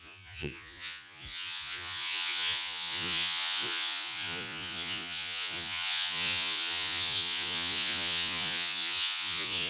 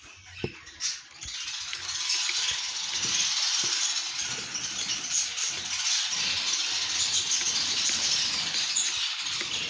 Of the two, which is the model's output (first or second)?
first